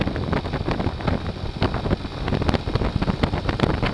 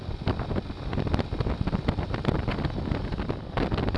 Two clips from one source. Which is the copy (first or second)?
second